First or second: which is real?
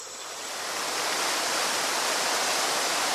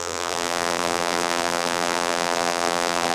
first